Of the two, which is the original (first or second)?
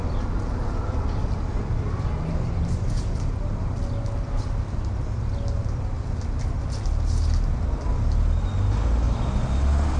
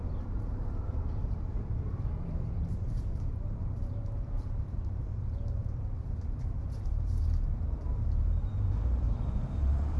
first